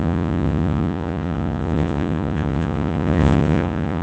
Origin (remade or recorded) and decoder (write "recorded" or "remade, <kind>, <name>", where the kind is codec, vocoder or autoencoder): remade, vocoder, Vocos